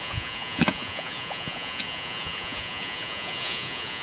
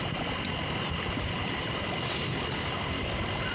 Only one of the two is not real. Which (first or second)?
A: first